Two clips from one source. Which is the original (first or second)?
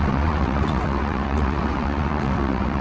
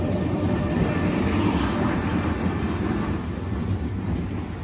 second